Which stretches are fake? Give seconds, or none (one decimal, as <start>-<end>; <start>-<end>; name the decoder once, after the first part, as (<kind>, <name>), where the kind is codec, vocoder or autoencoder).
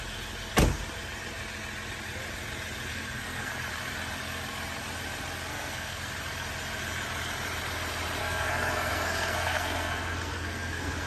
2.9-3.5 (codec, SNAC); 5.5-6.1; 8.2-11.1